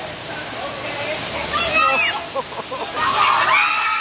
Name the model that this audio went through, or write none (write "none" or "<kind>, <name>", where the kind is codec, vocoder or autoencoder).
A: none